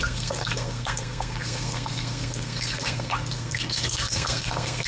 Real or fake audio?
fake